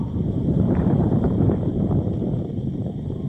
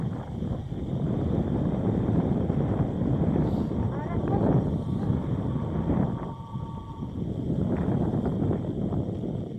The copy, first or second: first